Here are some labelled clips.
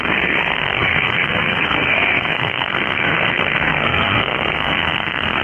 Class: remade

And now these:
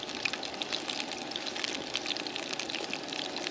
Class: recorded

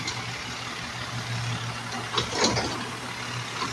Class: recorded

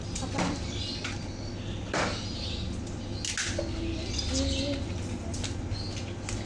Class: recorded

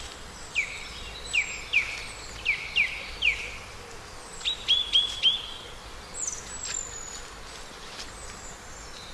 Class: recorded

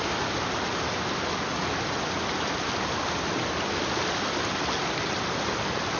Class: recorded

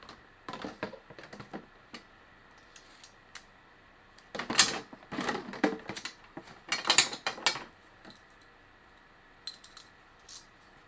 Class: recorded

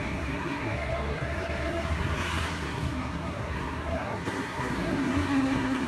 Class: remade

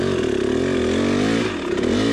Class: recorded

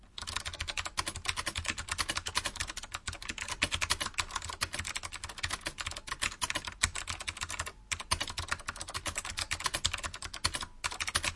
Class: recorded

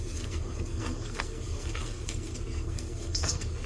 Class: remade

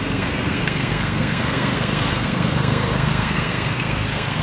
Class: remade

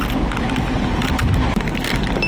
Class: recorded